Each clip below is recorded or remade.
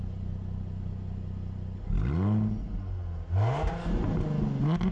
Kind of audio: recorded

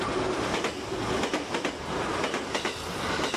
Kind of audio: recorded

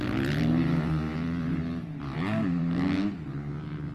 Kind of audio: recorded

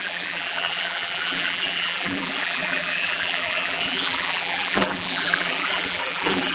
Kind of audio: remade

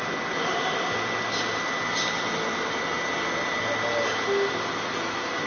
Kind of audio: recorded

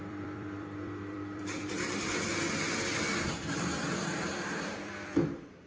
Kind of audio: remade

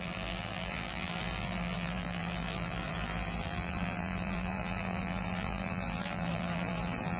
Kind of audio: remade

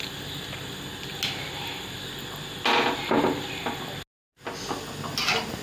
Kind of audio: recorded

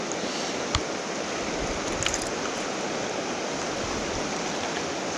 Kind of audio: recorded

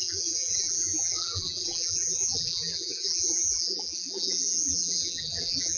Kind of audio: remade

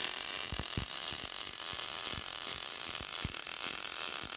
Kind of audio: remade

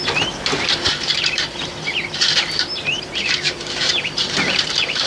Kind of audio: remade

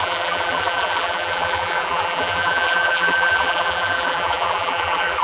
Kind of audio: remade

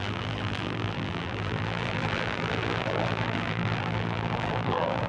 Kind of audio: remade